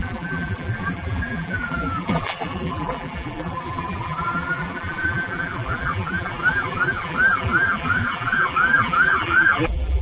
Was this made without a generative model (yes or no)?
no